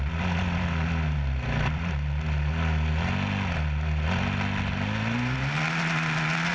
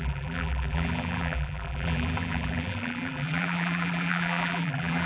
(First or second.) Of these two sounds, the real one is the first